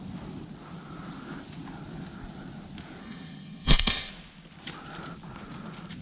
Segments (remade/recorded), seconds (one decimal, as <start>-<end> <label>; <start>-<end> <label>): 0.0-3.0 recorded; 3.0-4.1 remade; 4.1-6.0 recorded